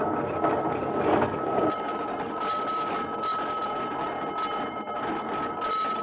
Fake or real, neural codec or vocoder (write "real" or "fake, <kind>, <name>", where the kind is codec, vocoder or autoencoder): real